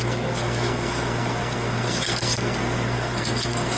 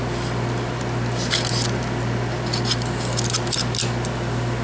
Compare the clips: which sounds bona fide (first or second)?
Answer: second